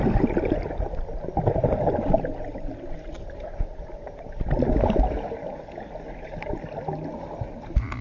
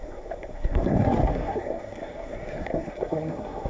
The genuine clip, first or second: first